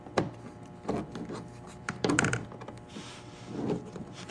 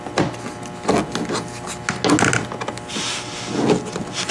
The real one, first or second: second